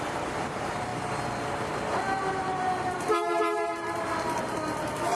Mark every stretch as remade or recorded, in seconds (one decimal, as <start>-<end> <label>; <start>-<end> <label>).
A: 0.0-0.9 remade; 0.9-2.3 recorded; 2.3-5.2 remade